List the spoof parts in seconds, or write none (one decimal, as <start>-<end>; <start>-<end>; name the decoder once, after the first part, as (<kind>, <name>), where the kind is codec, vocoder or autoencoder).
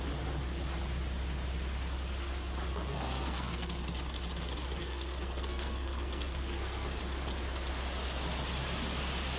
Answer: 2.7-3.8 (codec, SNAC); 4.8-7.0